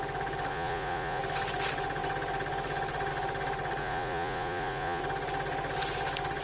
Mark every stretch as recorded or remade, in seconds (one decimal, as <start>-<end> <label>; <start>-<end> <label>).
0.0-0.5 recorded; 0.5-1.2 remade; 1.2-3.8 recorded; 3.8-5.0 remade; 5.0-6.4 recorded